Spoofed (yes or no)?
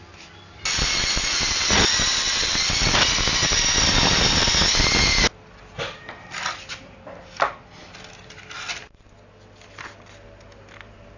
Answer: no